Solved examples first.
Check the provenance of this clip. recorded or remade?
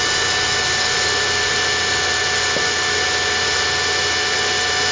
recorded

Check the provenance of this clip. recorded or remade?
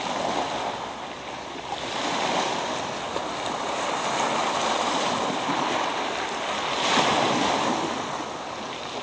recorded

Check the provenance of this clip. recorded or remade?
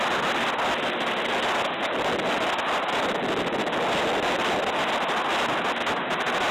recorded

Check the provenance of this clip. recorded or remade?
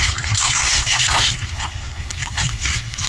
remade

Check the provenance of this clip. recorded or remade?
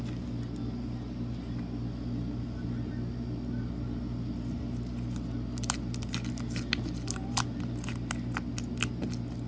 recorded